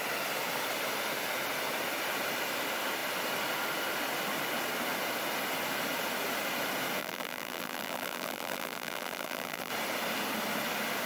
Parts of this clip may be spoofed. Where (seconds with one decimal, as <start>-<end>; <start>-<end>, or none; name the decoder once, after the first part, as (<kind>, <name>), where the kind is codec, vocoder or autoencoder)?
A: 7.0-9.7 (vocoder, BigVGAN v2)